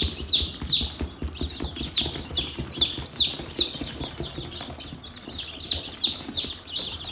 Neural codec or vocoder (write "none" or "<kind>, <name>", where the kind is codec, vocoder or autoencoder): none